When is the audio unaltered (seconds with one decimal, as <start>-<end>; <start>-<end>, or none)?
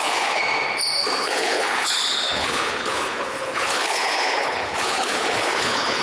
0.4-1.2